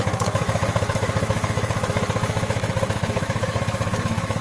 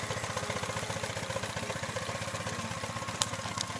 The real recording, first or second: second